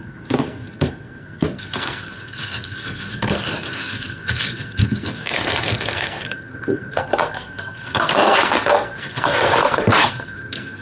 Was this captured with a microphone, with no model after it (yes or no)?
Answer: no